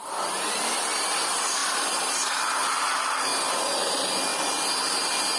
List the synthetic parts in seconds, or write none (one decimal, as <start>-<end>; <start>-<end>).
1.6-2.4; 3.3-3.9